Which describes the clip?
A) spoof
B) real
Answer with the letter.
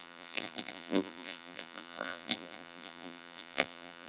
A